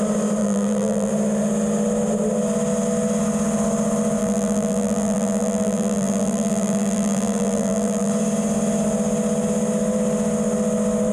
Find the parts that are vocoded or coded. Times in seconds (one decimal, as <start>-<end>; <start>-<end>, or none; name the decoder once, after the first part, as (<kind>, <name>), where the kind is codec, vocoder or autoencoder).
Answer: 0.4-1.1 (vocoder, BigVGAN v2); 4.2-8.1